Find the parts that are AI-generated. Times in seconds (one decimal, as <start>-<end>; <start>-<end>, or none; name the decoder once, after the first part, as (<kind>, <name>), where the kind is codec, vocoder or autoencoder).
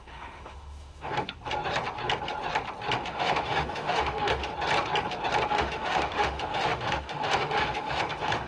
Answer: 0.0-1.3 (autoencoder, DAC-VAE); 3.1-4.5; 5.5-8.5